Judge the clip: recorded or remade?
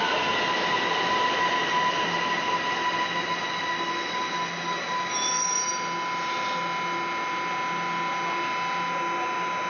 recorded